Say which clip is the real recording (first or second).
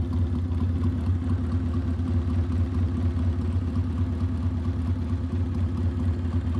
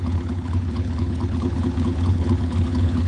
first